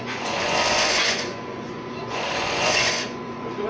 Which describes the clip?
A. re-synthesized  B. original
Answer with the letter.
A